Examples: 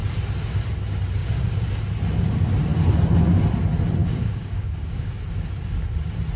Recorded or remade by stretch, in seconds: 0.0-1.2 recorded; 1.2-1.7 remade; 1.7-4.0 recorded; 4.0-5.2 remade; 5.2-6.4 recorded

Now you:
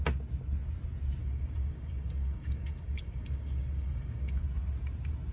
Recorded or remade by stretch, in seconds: 0.0-1.2 recorded; 1.2-4.4 remade; 4.4-5.3 recorded

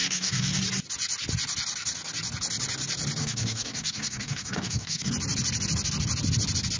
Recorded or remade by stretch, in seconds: 0.0-0.6 remade; 0.6-3.2 recorded; 3.2-5.1 remade; 5.1-6.8 recorded

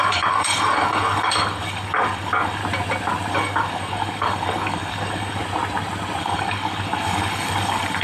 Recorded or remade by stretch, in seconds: 0.0-2.6 remade; 2.6-3.3 recorded; 3.3-5.4 remade; 5.4-6.2 recorded; 6.2-8.0 remade

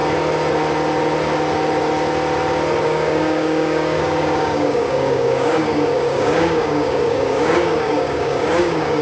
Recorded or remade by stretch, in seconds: 0.0-2.8 recorded; 2.8-9.0 remade